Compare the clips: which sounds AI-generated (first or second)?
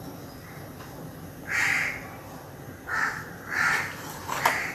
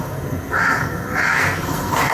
second